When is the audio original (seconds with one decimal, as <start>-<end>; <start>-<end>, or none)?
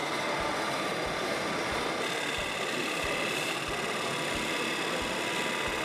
0.0-5.8